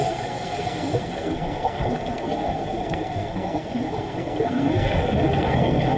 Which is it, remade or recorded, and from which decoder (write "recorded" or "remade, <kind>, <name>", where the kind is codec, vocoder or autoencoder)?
remade, codec, SNAC